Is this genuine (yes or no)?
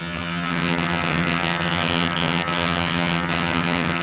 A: no